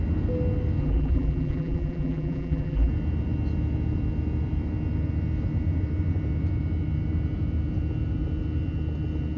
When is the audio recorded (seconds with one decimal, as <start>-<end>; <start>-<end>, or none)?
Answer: 0.0-0.8; 2.9-9.4